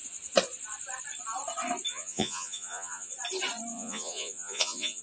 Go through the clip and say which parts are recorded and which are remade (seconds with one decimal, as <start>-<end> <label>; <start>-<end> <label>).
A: 0.0-1.9 recorded; 1.9-3.1 remade; 3.1-3.7 recorded; 3.7-5.0 remade

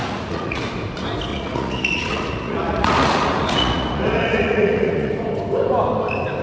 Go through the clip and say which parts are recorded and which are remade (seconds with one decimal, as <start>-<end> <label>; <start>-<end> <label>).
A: 0.0-0.6 remade; 0.6-1.3 recorded; 1.3-5.1 remade; 5.1-6.4 recorded

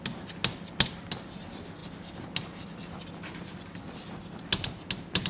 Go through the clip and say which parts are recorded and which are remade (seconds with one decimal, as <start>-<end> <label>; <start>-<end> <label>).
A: 0.0-5.3 recorded